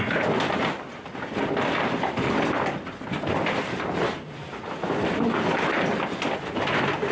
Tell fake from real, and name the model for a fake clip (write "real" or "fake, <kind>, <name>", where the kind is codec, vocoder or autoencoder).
real